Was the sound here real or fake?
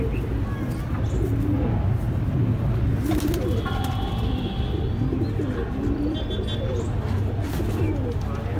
real